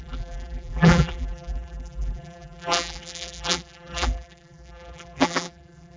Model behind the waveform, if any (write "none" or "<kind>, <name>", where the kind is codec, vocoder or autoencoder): vocoder, BigVGAN v2